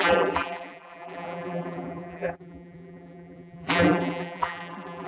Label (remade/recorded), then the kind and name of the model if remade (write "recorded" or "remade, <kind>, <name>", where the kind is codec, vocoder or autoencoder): remade, vocoder, BigVGAN v2